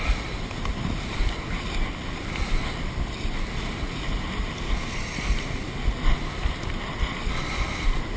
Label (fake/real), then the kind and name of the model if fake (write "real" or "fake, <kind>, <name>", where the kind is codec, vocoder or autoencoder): real